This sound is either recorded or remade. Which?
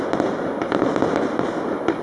recorded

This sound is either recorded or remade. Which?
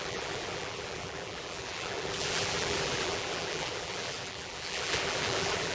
remade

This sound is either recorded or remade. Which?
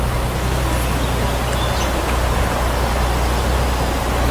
recorded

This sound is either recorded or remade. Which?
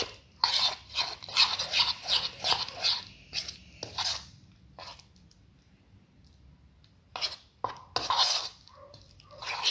recorded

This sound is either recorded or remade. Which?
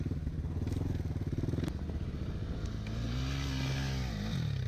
recorded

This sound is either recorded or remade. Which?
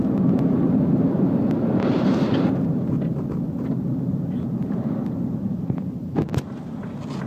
recorded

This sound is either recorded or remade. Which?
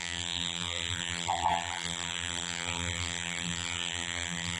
remade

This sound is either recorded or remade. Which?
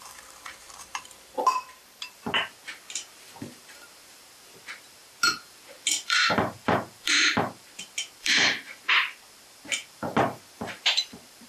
remade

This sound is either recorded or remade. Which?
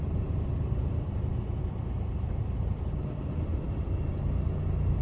remade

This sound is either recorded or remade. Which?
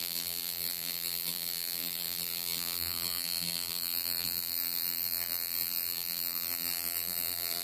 remade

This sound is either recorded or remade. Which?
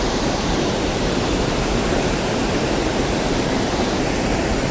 remade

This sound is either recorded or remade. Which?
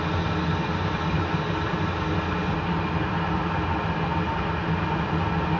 recorded